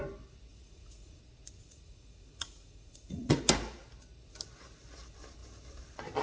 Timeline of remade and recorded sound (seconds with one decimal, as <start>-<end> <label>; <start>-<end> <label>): 0.0-0.5 recorded; 0.5-1.2 remade; 1.2-1.6 recorded; 1.6-3.4 remade; 3.4-6.2 recorded